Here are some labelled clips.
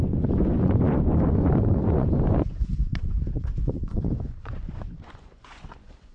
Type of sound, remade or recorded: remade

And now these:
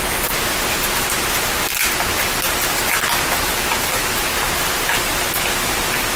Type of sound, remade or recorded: recorded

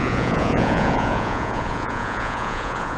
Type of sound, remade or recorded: remade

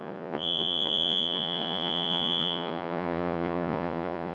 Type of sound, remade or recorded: remade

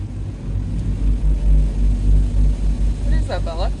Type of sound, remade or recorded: recorded